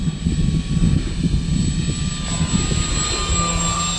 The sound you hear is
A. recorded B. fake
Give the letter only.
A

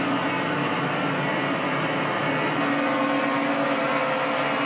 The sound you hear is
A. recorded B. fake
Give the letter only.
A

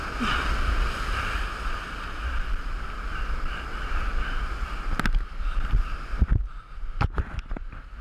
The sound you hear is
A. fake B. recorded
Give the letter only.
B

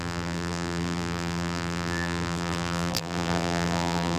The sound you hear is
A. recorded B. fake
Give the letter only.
B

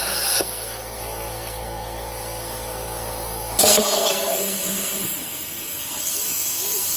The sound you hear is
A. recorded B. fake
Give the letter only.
B